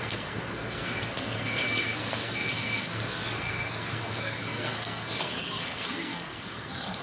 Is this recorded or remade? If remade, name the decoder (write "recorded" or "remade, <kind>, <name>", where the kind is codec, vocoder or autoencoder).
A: remade, codec, SNAC